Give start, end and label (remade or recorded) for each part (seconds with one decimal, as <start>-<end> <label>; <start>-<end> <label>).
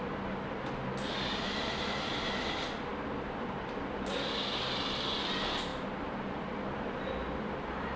0.0-8.0 recorded